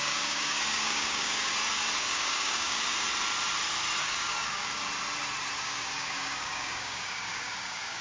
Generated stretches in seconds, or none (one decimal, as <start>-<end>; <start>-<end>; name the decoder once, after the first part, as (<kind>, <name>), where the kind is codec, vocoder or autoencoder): 0.0-1.5 (codec, DAC); 2.1-2.9; 4.0-4.8; 5.6-8.0